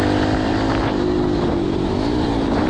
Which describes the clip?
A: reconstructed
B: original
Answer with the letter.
B